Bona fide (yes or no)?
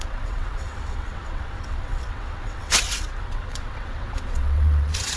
no